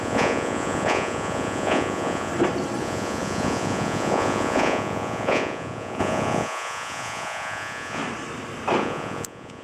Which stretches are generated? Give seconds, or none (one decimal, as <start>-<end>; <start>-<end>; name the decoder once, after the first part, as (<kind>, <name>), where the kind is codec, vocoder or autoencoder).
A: 0.0-2.3 (vocoder, Vocos); 2.8-8.0; 8.8-9.6

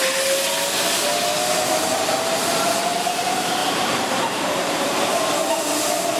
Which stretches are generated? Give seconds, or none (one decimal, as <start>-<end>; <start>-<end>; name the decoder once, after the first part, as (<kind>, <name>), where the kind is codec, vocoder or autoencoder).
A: 3.6-5.3 (vocoder, BigVGAN v2)

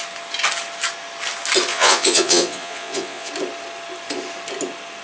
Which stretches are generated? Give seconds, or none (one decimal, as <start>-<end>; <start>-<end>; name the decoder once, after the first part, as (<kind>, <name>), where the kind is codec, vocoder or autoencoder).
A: 1.7-3.3 (vocoder, Vocos)

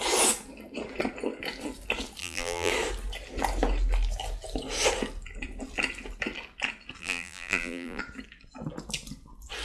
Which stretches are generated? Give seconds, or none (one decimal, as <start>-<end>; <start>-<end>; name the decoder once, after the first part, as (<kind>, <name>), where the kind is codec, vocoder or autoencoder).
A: 2.2-2.7 (vocoder, BigVGAN v2); 7.0-8.0